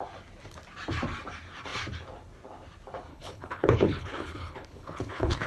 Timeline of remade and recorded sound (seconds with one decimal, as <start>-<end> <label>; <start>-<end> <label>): 0.0-3.1 recorded; 3.1-5.5 remade